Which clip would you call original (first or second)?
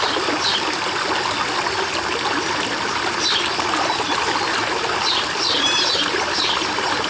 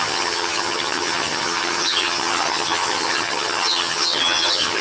first